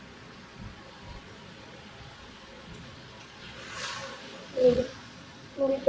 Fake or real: fake